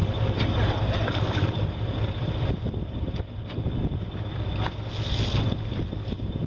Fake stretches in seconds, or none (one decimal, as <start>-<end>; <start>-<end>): 0.0-3.3